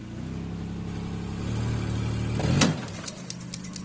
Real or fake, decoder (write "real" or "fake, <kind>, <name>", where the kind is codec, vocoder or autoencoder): real